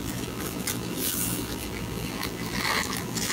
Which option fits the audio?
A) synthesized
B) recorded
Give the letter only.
A